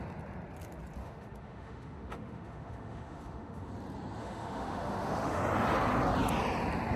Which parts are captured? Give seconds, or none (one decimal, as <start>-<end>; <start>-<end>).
0.0-1.0; 3.7-4.2; 5.4-7.0